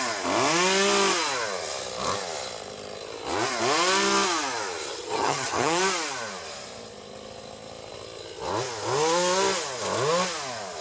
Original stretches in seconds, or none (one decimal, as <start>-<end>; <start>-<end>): 0.0-4.9; 5.8-10.8